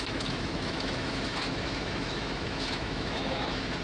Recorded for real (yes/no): no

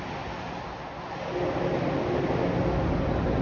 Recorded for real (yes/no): yes